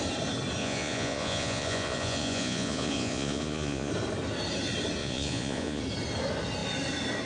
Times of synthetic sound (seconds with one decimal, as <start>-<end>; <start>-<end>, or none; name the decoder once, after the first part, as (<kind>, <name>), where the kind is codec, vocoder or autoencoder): 0.6-3.9 (vocoder, Vocos); 5.0-5.8